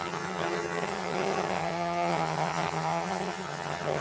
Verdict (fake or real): fake